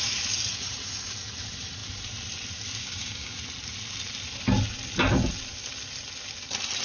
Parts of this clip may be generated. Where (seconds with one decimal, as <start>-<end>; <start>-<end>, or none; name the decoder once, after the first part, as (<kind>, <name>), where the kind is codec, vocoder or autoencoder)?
2.8-3.3 (codec, DAC)